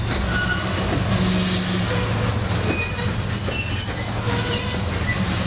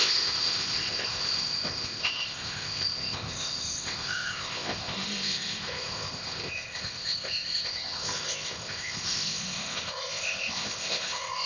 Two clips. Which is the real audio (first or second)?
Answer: first